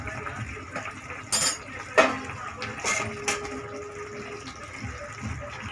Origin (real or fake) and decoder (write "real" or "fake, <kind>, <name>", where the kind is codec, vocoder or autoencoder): real